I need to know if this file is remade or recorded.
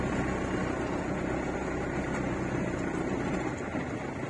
recorded